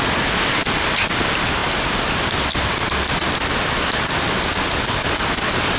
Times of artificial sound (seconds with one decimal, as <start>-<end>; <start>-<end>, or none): none